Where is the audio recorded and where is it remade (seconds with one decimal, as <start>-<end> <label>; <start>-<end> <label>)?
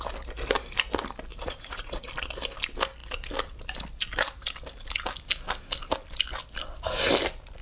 0.0-1.3 recorded; 1.3-2.1 remade; 2.1-7.6 recorded